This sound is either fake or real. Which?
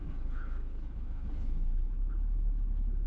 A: fake